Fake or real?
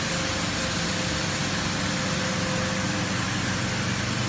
real